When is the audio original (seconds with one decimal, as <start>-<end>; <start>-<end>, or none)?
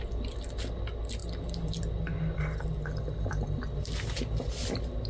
0.0-5.1